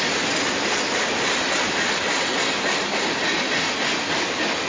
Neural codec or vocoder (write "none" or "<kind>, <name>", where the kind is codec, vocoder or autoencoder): none